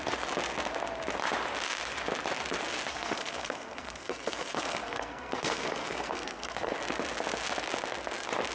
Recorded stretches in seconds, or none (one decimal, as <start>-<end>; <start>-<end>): 0.0-2.9; 6.7-8.5